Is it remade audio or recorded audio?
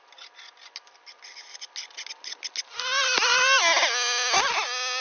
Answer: recorded